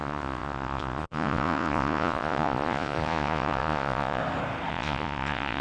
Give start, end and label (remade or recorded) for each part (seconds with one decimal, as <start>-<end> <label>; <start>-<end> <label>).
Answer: 0.0-4.2 remade; 4.2-4.7 recorded; 4.7-5.6 remade